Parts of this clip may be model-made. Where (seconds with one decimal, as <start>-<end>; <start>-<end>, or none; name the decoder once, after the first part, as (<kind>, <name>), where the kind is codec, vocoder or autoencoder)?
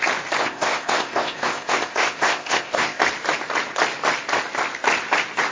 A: 0.4-3.0 (codec, ZipCodec)